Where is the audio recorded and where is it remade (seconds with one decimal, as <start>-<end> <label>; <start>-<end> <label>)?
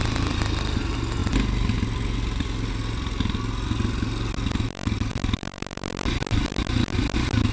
0.0-7.5 recorded